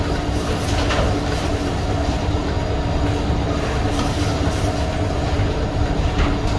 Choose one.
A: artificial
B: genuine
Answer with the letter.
B